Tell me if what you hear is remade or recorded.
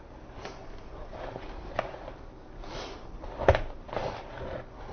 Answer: recorded